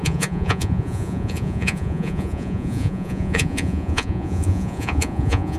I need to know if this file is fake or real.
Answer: fake